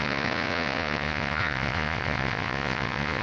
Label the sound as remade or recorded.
remade